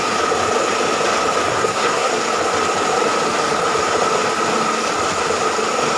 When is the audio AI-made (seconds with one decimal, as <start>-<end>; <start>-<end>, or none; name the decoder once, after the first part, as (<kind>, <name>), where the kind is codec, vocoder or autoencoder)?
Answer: 1.5-2.1 (codec, SNAC)